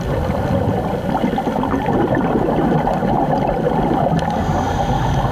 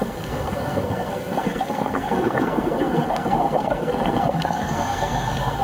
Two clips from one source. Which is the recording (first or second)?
first